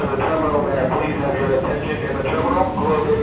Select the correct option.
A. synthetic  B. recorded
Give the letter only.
B